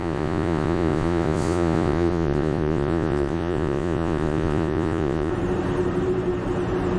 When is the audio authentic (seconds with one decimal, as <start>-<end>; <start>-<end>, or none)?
5.3-7.0